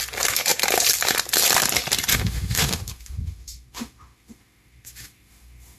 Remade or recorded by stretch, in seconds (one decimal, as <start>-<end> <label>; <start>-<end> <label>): 0.0-2.1 recorded; 2.1-5.8 remade